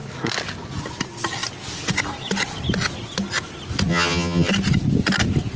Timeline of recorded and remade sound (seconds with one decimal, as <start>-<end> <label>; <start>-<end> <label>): 0.0-3.9 recorded; 3.9-4.5 remade; 4.5-5.6 recorded